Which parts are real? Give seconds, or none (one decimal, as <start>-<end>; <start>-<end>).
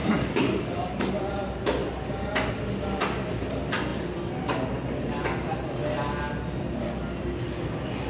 1.3-8.1